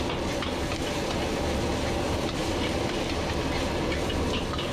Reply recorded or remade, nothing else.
recorded